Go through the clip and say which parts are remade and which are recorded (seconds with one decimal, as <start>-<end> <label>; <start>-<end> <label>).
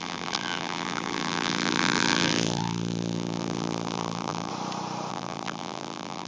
0.0-4.5 remade; 4.5-5.1 recorded; 5.1-6.3 remade